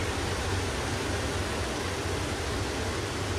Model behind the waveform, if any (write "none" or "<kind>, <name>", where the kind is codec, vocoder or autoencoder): none